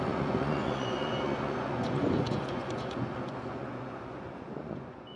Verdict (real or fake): fake